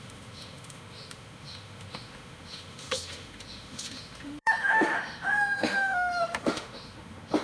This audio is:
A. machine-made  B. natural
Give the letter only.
A